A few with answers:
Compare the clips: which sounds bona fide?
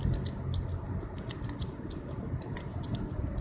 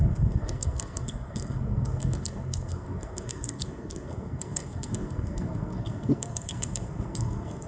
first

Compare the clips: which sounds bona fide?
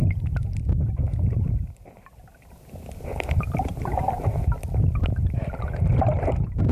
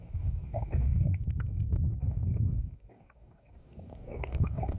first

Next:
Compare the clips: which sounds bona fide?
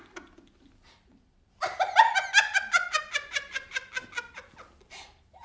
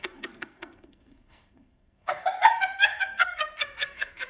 first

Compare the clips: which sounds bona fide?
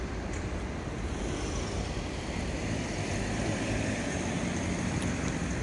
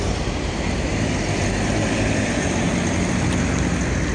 second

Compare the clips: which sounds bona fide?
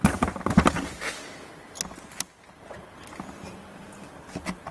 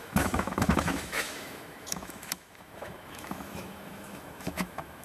first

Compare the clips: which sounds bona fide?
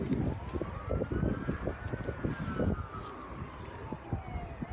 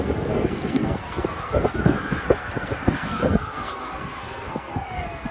first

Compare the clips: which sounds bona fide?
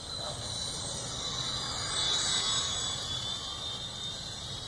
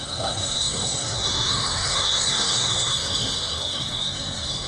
first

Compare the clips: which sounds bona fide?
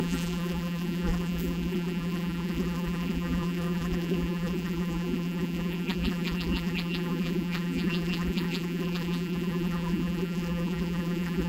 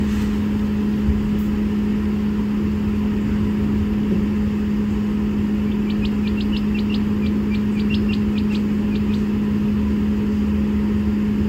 second